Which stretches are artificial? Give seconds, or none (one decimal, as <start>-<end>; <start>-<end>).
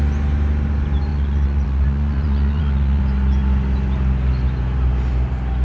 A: 1.1-3.0